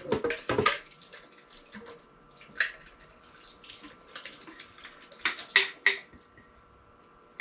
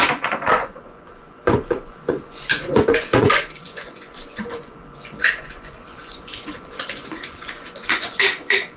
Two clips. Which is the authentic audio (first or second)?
first